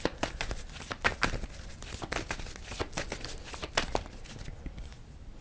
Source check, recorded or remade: recorded